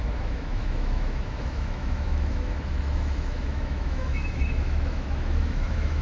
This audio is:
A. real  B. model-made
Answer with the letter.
B